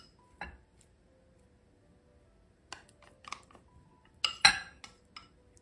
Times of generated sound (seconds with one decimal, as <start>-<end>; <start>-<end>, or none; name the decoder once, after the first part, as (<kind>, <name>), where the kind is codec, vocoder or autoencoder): none